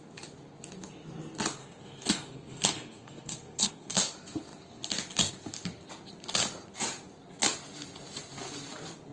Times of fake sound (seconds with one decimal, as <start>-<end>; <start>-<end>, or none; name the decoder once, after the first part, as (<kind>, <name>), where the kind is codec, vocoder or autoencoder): 1.6-4.0 (codec, SNAC)